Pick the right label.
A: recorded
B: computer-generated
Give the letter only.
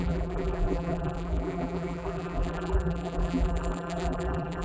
B